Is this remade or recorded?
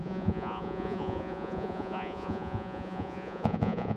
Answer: remade